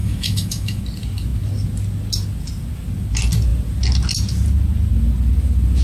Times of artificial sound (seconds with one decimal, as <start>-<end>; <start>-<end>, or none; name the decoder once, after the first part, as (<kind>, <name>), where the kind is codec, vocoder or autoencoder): 0.0-0.8 (autoencoder, DAC-VAE)